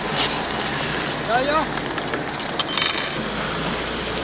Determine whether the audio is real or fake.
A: real